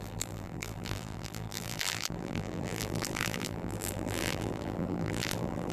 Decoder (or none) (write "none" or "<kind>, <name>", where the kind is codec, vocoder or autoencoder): vocoder, BigVGAN v2